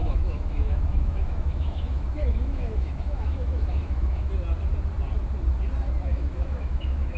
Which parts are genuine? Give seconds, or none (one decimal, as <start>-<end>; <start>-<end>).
4.3-6.1